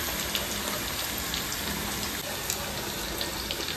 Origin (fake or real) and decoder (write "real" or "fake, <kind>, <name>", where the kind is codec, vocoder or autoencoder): real